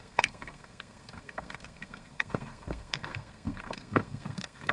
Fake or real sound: fake